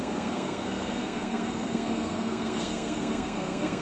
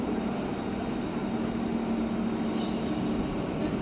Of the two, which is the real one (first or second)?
second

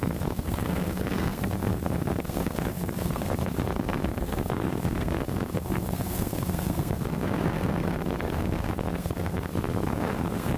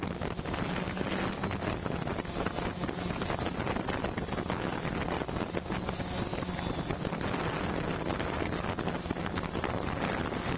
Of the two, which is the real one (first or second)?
second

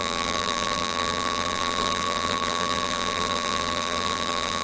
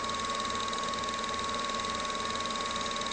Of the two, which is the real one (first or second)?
second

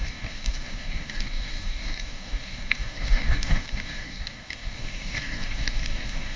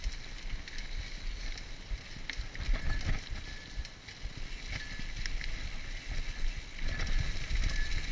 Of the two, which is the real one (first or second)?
second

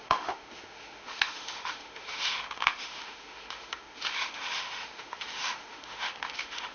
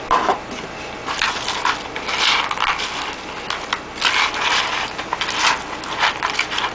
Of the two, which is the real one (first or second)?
second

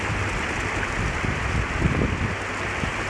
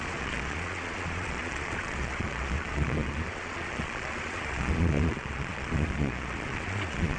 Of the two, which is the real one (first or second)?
first